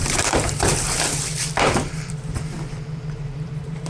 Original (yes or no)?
no